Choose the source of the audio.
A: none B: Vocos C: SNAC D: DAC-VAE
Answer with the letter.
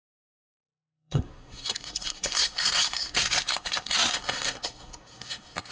C